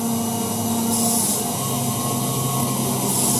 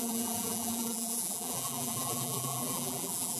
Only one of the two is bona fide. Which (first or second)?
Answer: first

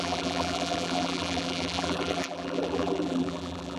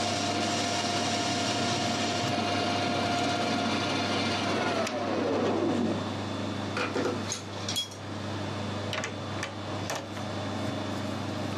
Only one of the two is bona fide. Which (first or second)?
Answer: second